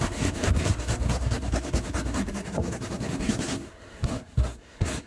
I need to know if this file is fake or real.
fake